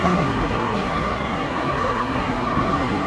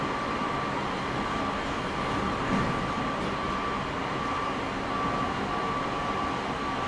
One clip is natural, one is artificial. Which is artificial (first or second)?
first